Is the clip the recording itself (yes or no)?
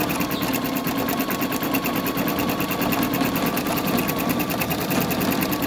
yes